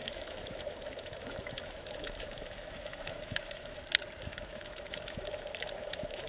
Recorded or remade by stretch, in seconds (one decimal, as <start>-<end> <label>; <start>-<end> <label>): 0.0-3.8 remade; 3.8-4.3 recorded; 4.3-6.3 remade